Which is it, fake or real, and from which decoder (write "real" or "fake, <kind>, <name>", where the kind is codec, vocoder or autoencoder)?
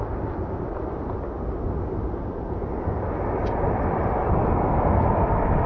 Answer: real